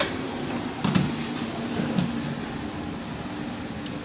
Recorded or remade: recorded